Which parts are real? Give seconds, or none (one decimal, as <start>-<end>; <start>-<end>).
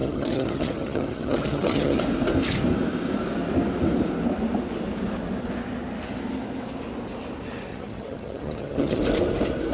2.0-7.7; 9.0-9.7